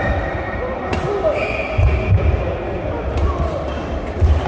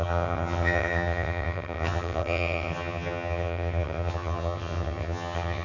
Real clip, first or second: first